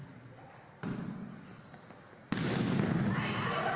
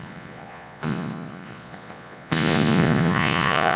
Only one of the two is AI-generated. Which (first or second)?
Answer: second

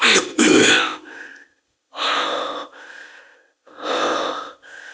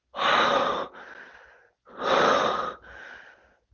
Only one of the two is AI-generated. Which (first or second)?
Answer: first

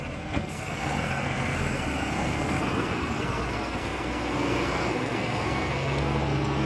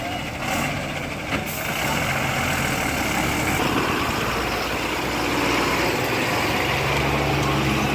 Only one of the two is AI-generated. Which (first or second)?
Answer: first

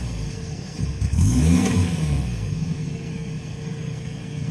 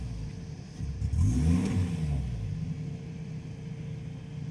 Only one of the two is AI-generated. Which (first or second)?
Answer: first